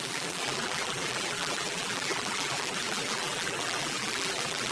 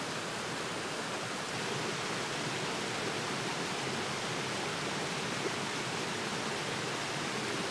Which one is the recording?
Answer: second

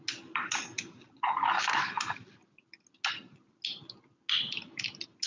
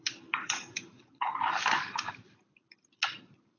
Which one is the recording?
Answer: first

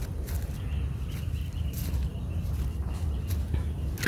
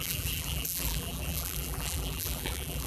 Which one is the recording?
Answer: first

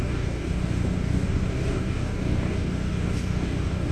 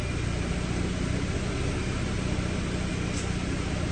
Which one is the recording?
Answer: second